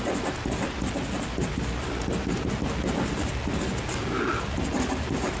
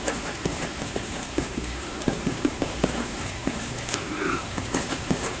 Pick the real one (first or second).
first